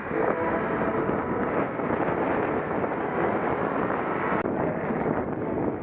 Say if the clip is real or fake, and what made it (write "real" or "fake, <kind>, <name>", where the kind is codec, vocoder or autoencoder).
real